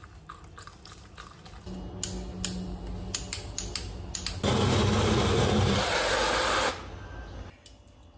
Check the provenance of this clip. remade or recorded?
recorded